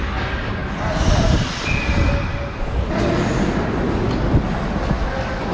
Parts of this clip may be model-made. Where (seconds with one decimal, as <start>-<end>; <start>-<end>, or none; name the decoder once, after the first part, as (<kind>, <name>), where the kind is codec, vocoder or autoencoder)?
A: none